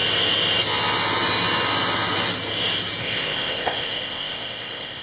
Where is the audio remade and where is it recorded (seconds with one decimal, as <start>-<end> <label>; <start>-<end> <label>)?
0.0-3.0 recorded; 3.0-5.0 remade